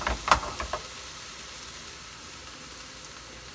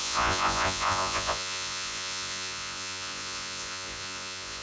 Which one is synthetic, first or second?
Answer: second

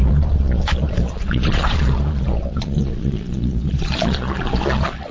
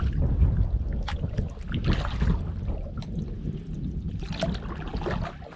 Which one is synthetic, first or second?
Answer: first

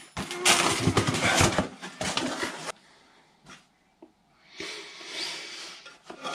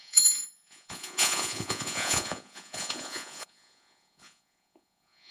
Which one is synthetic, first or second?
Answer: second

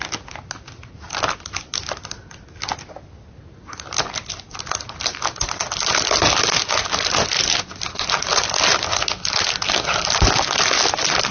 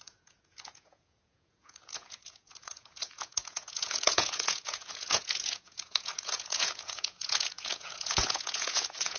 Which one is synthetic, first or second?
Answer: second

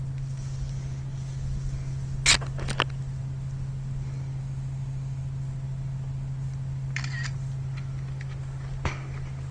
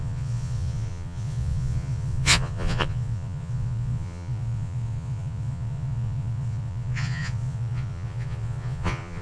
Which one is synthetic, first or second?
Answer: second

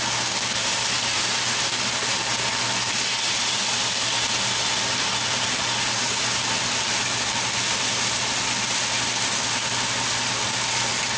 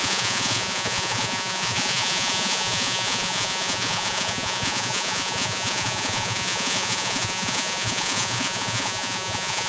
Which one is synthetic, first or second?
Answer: second